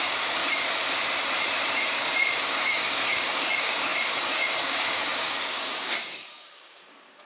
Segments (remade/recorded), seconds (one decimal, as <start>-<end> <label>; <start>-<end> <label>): 0.0-0.4 remade; 0.4-1.9 recorded; 1.9-7.3 remade